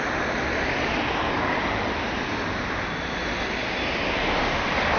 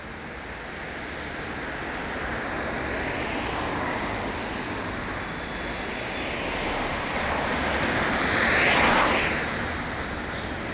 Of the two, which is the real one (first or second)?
second